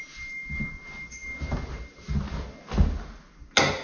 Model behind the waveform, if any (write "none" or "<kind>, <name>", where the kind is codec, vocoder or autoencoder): none